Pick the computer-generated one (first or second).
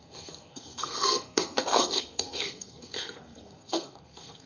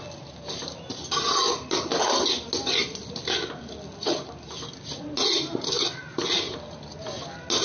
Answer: first